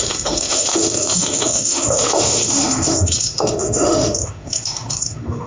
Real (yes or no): no